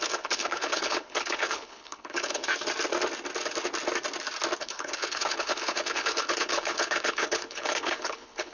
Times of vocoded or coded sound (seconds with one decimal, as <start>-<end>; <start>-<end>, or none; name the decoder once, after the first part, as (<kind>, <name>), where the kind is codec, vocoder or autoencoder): 0.0-2.5 (codec, HILCodec); 4.6-8.5